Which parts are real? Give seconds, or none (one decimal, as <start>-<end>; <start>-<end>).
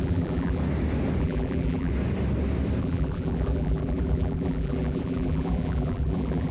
0.6-1.2; 1.9-2.8